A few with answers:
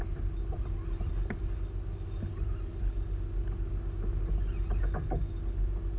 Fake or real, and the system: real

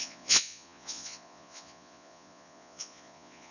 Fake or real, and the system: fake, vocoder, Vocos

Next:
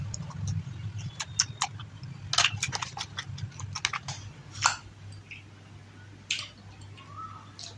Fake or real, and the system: real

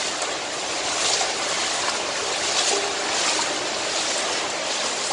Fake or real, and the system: real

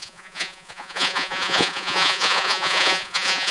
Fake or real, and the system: fake, vocoder, Vocos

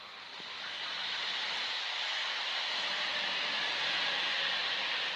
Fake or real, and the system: real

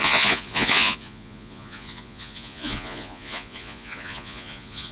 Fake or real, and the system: fake, vocoder, Vocos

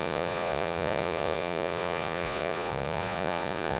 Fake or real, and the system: fake, vocoder, Vocos